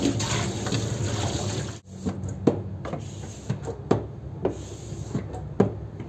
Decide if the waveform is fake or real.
real